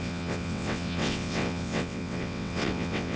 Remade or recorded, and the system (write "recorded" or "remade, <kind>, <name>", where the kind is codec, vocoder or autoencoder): remade, vocoder, WaveNeXt